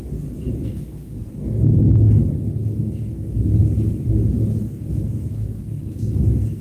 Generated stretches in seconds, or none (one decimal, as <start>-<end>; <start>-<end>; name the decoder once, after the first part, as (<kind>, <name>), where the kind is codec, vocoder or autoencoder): 0.6-1.8 (codec, SNAC); 2.6-3.3; 4.5-6.6